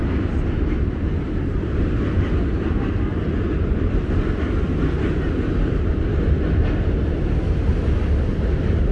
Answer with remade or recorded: recorded